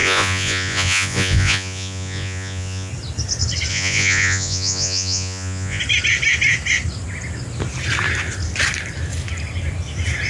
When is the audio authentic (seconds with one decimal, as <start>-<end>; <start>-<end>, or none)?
2.9-3.7; 5.8-10.3